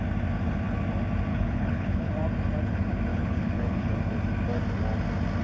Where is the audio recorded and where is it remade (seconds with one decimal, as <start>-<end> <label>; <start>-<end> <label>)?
0.0-1.3 recorded; 1.3-2.1 remade; 2.1-3.1 recorded; 3.1-3.9 remade; 3.9-5.4 recorded

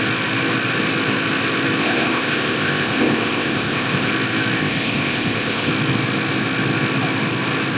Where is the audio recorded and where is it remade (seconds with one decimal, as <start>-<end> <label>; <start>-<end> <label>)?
0.0-1.8 recorded; 1.8-4.1 remade; 4.1-4.6 recorded; 4.6-5.7 remade; 5.7-7.8 recorded

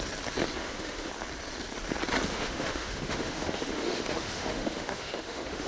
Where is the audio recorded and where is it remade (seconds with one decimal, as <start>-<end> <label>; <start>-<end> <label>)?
0.0-0.6 recorded; 0.6-1.1 remade; 1.1-2.3 recorded; 2.3-5.7 remade

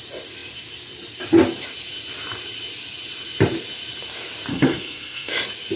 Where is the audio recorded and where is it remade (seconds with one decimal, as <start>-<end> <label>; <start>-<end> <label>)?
0.0-4.5 recorded; 4.5-5.3 remade; 5.3-5.8 recorded

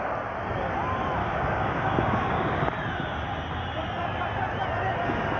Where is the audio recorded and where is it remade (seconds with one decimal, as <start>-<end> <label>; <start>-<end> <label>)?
0.0-1.2 recorded; 1.2-2.6 remade; 2.6-5.4 recorded